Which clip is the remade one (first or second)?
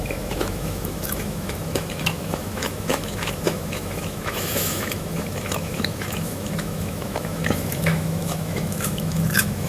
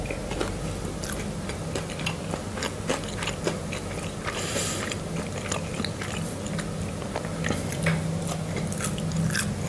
first